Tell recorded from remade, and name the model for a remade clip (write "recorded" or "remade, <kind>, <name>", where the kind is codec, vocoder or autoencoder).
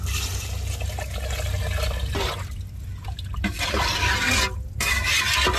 recorded